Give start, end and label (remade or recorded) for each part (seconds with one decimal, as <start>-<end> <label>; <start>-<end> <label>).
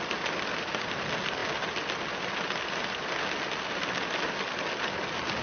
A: 0.0-5.4 recorded